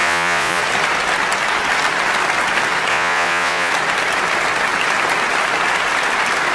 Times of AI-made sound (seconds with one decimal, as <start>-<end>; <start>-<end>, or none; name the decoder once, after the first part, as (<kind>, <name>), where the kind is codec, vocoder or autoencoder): 0.0-0.6 (vocoder, Vocos); 2.9-3.7